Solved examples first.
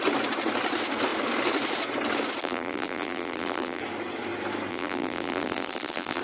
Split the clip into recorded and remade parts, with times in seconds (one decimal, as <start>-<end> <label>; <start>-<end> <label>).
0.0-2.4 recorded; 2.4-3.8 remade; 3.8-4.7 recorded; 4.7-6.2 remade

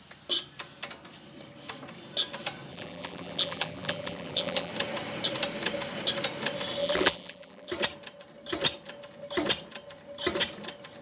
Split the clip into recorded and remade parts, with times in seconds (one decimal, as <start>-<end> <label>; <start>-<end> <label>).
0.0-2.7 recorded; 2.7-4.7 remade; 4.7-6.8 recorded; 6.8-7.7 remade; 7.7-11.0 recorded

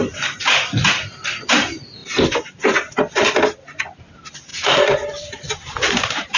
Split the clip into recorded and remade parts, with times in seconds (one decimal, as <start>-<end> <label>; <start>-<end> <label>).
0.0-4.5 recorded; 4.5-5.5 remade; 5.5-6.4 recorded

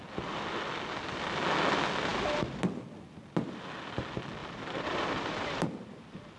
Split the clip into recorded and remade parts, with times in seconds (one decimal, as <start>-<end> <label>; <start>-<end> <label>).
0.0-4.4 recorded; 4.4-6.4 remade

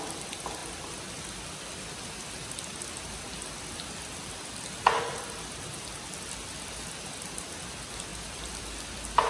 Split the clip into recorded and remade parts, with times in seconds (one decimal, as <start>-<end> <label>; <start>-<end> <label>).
0.0-8.1 recorded; 8.1-8.6 remade; 8.6-9.3 recorded

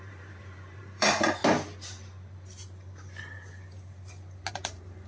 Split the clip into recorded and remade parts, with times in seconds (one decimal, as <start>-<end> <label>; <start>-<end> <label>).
0.0-1.4 remade; 1.4-4.5 recorded; 4.5-5.1 remade

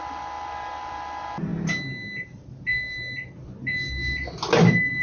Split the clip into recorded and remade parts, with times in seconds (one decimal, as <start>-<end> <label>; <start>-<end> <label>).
0.0-5.0 recorded